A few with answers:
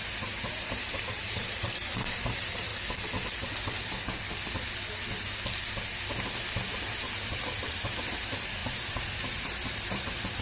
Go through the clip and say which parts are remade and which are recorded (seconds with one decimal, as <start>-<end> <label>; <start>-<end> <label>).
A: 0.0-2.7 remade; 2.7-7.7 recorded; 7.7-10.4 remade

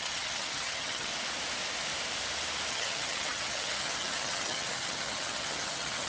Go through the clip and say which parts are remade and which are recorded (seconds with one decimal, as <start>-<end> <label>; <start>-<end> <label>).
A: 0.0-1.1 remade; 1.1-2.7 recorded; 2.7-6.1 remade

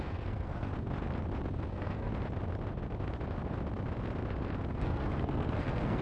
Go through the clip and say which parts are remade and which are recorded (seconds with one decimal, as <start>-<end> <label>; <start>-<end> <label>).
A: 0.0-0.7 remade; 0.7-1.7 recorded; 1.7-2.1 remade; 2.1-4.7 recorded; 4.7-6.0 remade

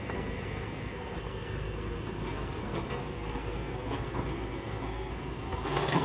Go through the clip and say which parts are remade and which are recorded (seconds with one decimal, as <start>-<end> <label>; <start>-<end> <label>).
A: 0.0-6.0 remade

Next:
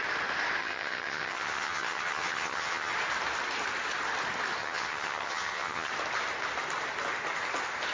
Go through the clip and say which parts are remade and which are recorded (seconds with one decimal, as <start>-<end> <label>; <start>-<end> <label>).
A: 0.0-0.6 recorded; 0.6-2.9 remade; 2.9-4.6 recorded; 4.6-5.9 remade; 5.9-7.9 recorded

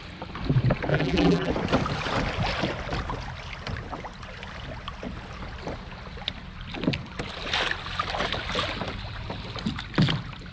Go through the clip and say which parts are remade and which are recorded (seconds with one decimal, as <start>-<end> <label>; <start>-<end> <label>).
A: 0.0-0.9 recorded; 0.9-1.5 remade; 1.5-10.5 recorded

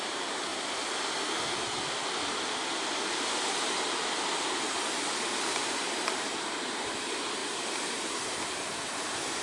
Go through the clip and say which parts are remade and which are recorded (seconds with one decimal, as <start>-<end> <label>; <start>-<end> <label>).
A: 0.0-0.5 remade; 0.5-5.5 recorded; 5.5-9.4 remade

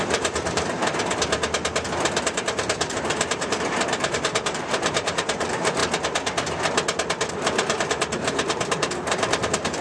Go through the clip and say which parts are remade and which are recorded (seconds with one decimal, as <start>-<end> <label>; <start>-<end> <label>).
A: 0.0-0.8 remade; 0.8-2.2 recorded; 2.2-5.8 remade; 5.8-7.3 recorded; 7.3-9.8 remade